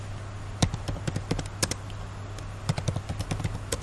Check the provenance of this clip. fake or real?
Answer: real